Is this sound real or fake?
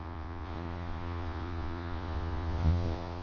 fake